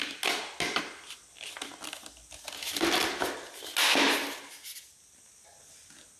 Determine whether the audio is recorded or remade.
recorded